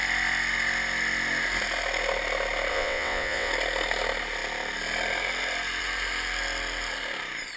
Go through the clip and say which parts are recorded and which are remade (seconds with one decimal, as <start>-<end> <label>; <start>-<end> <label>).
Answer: 0.0-2.7 recorded; 2.7-3.5 remade; 3.5-7.6 recorded